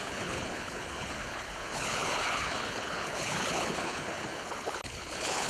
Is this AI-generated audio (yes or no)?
yes